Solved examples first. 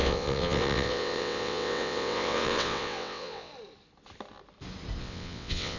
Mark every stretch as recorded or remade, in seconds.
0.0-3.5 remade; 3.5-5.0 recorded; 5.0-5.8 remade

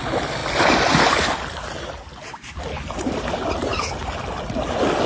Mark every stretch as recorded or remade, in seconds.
0.0-5.1 recorded

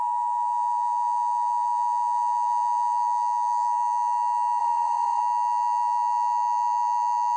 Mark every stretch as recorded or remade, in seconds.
0.0-4.6 recorded; 4.6-5.2 remade; 5.2-7.4 recorded

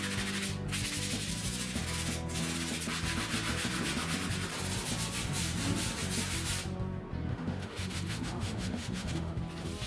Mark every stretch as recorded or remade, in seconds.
0.0-7.3 recorded; 7.3-9.4 remade; 9.4-9.9 recorded

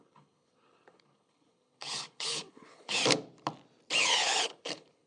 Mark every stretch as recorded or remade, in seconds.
0.0-3.0 remade; 3.0-4.0 recorded; 4.0-5.1 remade

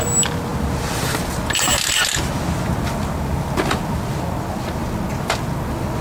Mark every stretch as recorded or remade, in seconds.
0.0-6.0 recorded